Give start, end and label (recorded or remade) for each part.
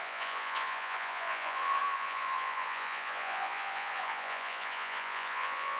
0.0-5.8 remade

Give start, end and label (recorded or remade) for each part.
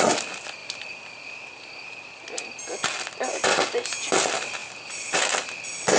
0.0-6.0 recorded